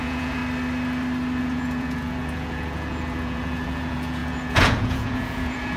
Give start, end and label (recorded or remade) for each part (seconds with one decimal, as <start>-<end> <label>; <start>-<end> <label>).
0.0-0.4 remade; 0.4-1.4 recorded; 1.4-5.8 remade